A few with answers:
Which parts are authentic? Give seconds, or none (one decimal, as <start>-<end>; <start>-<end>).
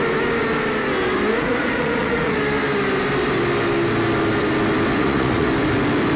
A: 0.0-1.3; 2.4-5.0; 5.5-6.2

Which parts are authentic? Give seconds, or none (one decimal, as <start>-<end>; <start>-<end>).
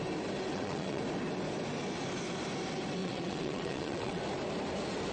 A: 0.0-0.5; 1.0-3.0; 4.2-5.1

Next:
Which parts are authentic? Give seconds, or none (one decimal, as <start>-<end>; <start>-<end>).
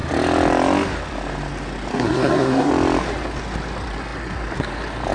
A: 0.0-1.9; 2.7-5.1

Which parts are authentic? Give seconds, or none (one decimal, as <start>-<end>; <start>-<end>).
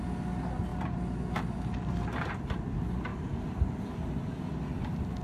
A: 0.0-5.2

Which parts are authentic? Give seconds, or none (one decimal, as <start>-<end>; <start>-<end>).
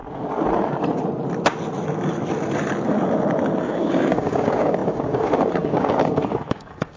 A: 0.0-3.6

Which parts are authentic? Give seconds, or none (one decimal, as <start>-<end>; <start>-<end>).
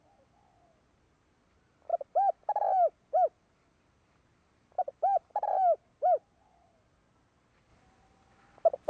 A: 0.0-5.3; 6.4-8.9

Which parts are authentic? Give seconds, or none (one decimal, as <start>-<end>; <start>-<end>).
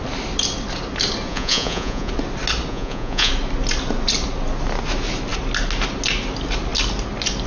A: 0.0-1.3; 2.1-2.7; 3.3-7.5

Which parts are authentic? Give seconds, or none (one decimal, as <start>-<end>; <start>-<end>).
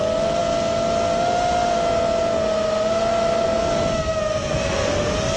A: 0.0-5.4